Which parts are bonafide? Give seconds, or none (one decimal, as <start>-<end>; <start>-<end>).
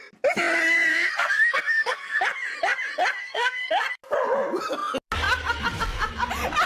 0.0-0.9; 2.2-3.2; 3.7-6.7